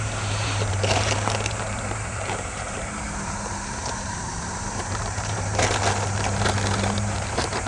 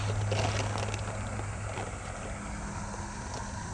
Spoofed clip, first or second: first